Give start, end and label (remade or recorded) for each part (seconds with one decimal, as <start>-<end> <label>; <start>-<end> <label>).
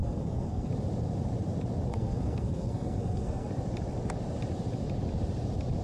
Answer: 0.0-0.7 remade; 0.7-1.9 recorded; 1.9-3.5 remade; 3.5-5.8 recorded